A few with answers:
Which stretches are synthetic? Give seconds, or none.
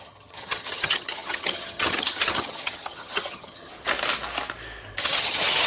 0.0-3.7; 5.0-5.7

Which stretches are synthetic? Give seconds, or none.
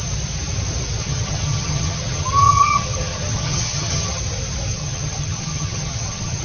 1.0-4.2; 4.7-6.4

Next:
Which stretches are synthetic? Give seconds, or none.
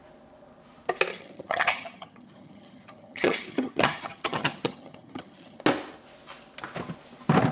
1.1-5.6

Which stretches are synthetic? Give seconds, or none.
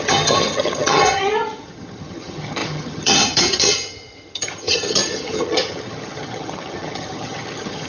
0.0-7.9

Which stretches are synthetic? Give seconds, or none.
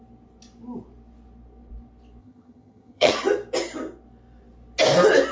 2.2-3.1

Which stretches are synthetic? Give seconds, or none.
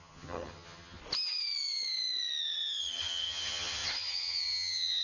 0.0-1.0; 2.8-5.0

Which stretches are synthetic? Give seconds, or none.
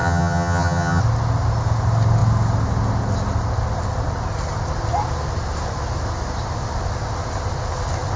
0.0-1.0